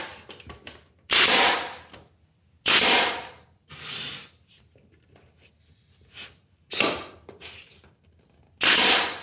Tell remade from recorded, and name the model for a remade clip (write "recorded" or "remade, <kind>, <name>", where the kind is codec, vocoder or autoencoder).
recorded